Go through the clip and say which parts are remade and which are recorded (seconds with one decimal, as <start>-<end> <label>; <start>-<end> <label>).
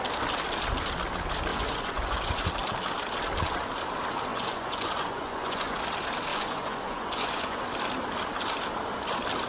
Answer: 0.0-1.5 recorded; 1.5-2.5 remade; 2.5-4.3 recorded; 4.3-5.8 remade; 5.8-6.3 recorded; 6.3-7.6 remade; 7.6-9.5 recorded